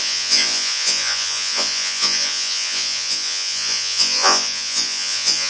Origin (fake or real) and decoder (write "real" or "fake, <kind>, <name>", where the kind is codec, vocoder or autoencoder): fake, vocoder, Vocos